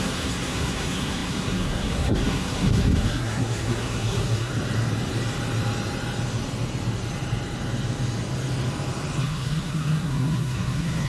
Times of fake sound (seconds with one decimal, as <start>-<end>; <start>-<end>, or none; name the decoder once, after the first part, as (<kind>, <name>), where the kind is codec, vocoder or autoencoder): 0.0-4.5 (codec, SNAC); 9.2-11.1